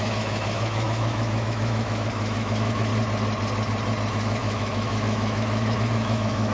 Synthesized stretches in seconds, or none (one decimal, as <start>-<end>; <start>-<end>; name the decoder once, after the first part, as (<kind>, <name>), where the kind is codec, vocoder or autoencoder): 0.0-2.9 (autoencoder, DAC-VAE); 4.1-6.5